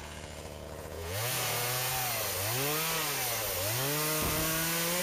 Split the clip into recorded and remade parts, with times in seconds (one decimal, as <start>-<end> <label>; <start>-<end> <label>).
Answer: 0.0-1.9 remade; 1.9-5.0 recorded